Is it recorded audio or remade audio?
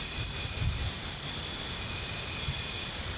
recorded